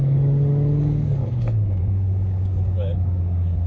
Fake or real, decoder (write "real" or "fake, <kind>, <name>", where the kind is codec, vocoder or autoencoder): fake, codec, DAC